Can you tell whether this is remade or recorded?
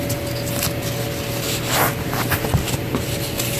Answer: recorded